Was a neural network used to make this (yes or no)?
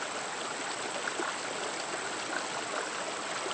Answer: no